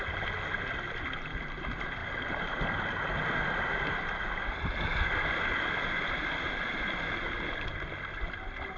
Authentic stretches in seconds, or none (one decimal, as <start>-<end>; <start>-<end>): 0.0-8.8